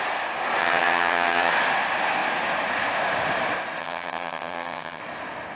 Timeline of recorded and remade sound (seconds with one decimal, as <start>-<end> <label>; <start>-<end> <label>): 0.0-0.6 recorded; 0.6-1.5 remade; 1.5-3.8 recorded; 3.8-5.0 remade; 5.0-5.6 recorded